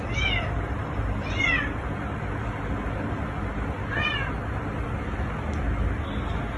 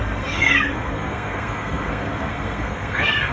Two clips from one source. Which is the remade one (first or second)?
second